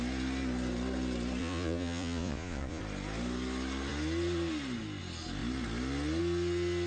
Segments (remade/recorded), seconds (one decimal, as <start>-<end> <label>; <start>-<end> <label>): 0.0-1.4 recorded; 1.4-2.8 remade; 2.8-6.9 recorded